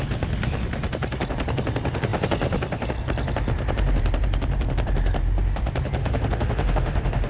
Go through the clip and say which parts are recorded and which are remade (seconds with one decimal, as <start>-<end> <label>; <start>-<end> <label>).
0.0-6.0 recorded; 6.0-7.3 remade

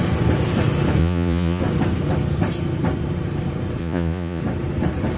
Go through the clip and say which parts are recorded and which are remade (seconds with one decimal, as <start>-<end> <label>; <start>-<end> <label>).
0.0-1.0 recorded; 1.0-1.6 remade; 1.6-3.8 recorded; 3.8-4.4 remade; 4.4-5.2 recorded

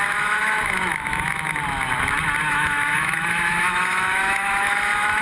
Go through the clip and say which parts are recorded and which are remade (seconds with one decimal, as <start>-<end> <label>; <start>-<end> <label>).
0.0-1.6 remade; 1.6-2.5 recorded; 2.5-5.2 remade

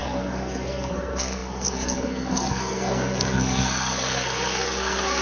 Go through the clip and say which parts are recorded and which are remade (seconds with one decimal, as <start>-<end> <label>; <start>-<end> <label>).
0.0-5.2 remade

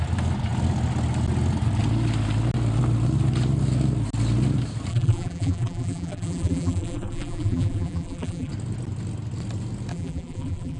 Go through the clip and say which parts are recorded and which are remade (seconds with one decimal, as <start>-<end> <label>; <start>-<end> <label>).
0.0-4.9 recorded; 4.9-8.5 remade; 8.5-9.9 recorded; 9.9-10.8 remade

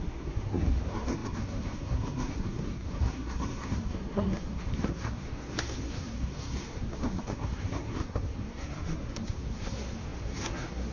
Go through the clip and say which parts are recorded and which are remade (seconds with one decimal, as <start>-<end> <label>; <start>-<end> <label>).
0.0-10.9 remade